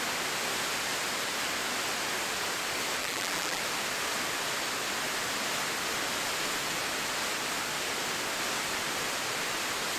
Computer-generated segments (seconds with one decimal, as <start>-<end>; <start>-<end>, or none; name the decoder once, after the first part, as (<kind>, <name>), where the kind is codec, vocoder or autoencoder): 3.0-3.6 (vocoder, BigVGAN v2)